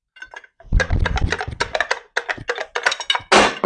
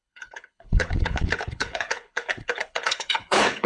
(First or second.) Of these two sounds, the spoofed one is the second